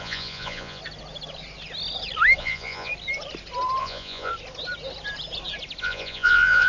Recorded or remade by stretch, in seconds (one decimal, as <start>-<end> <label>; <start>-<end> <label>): 0.0-0.8 remade; 0.8-2.4 recorded; 2.4-2.9 remade; 2.9-3.8 recorded; 3.8-4.3 remade; 4.3-5.8 recorded; 5.8-6.7 remade